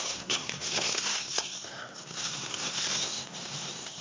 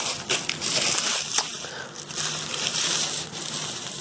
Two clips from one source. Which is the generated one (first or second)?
first